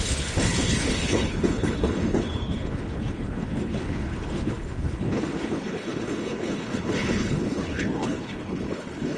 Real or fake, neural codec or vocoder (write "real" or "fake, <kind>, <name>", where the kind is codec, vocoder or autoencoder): fake, codec, HILCodec